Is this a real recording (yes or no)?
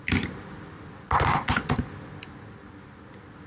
yes